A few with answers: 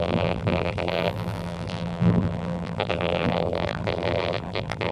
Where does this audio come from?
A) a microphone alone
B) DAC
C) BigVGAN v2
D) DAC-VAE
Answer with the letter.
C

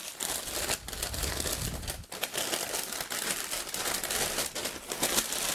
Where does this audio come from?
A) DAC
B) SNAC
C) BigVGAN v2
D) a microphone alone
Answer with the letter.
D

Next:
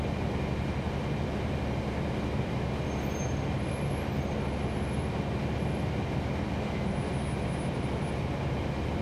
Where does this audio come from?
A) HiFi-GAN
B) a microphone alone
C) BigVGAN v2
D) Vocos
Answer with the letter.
B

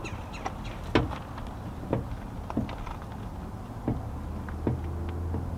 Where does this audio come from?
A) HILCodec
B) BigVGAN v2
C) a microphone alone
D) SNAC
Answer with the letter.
C